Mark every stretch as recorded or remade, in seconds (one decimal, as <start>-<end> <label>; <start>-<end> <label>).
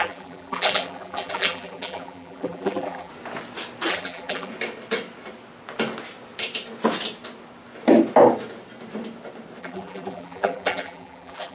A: 0.0-3.1 remade; 3.1-3.9 recorded; 3.9-4.5 remade; 4.5-9.6 recorded; 9.6-11.5 remade